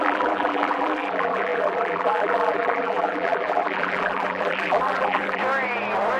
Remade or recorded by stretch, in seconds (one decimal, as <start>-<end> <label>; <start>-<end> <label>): 0.0-5.4 remade; 5.4-6.2 recorded